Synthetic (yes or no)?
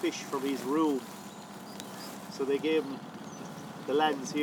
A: no